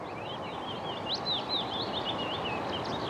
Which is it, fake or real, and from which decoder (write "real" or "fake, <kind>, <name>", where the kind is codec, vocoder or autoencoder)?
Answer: real